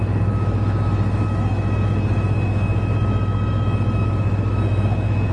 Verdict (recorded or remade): remade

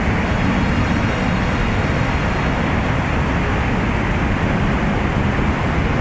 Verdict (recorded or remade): recorded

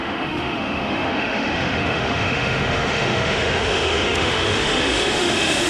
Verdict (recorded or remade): remade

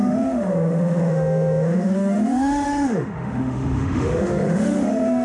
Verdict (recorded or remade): remade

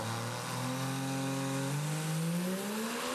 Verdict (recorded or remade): recorded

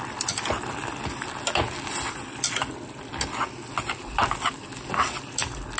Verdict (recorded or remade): recorded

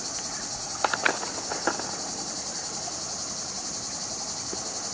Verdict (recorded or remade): recorded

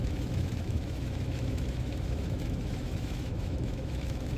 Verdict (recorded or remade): remade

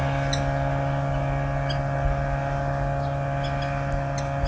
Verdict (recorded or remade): recorded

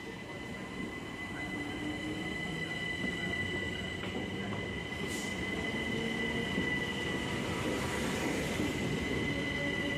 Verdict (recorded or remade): recorded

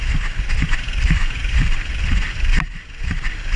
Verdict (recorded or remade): recorded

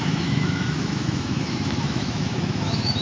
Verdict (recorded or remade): remade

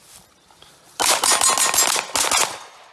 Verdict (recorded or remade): recorded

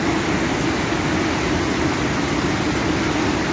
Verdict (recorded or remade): recorded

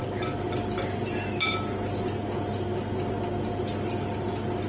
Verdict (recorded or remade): recorded